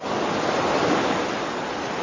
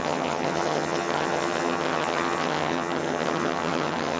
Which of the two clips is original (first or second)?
first